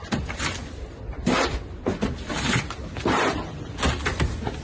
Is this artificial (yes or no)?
no